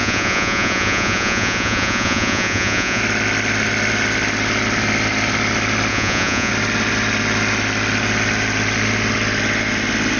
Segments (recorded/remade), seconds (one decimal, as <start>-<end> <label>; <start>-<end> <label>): 0.0-3.0 remade; 3.0-5.9 recorded; 5.9-6.5 remade; 6.5-10.2 recorded